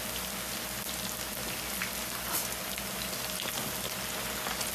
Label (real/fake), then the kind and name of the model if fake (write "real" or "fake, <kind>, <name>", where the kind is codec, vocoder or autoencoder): real